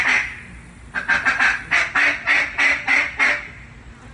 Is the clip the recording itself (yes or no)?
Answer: yes